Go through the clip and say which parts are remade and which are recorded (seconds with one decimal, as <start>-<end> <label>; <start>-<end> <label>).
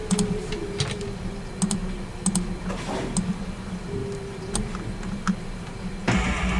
0.0-6.6 recorded